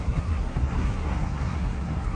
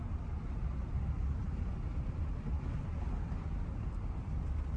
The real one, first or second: second